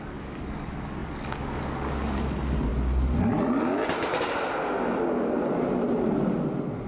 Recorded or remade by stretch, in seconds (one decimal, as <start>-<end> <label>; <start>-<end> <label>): 0.0-2.7 remade; 2.7-6.9 recorded